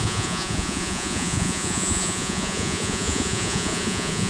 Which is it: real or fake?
fake